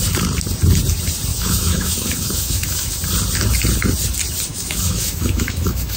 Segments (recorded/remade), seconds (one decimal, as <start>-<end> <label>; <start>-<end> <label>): 0.0-1.3 recorded; 1.3-3.0 remade; 3.0-4.5 recorded; 4.5-6.0 remade